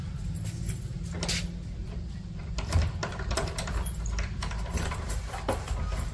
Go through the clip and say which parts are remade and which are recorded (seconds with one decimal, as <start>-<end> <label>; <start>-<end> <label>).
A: 0.0-1.8 recorded; 1.8-2.6 remade; 2.6-3.0 recorded; 3.0-5.4 remade; 5.4-6.1 recorded